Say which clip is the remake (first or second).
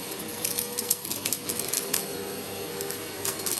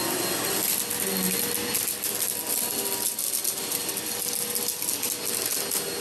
first